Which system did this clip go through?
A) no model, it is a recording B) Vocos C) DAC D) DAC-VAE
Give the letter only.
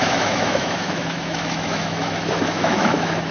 D